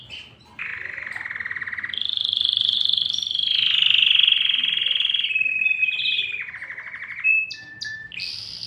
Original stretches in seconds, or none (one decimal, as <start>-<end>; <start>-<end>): 0.0-8.7